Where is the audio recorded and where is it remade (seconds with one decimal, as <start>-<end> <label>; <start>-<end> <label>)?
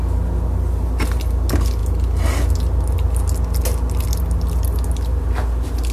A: 0.0-5.9 recorded